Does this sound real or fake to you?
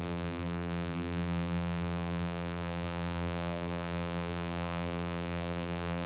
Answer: fake